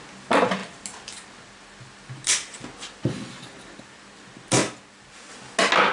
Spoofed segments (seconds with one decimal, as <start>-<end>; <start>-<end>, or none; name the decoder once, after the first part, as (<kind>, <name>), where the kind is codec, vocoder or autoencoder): none